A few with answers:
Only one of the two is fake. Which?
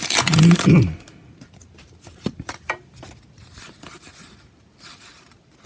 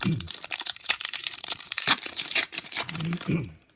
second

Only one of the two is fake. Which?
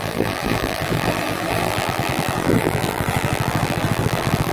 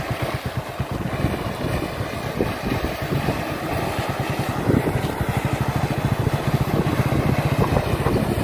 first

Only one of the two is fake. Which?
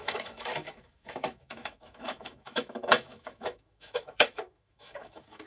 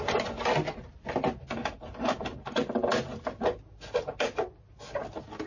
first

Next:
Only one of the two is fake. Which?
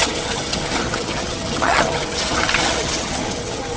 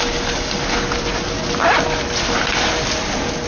first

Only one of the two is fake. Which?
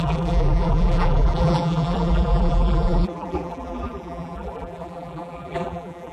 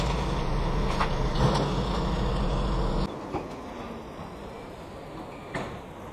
first